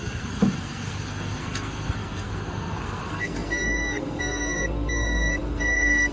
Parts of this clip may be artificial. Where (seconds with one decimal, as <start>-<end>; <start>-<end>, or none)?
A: 0.0-6.1